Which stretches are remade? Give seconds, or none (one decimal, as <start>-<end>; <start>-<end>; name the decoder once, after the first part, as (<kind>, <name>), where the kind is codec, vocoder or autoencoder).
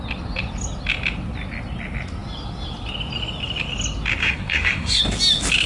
4.2-5.0 (codec, SNAC)